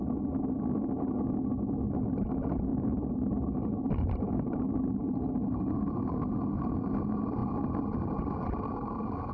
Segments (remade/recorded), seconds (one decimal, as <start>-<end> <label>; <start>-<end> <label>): 0.0-2.7 recorded; 2.7-5.9 remade; 5.9-8.7 recorded; 8.7-9.3 remade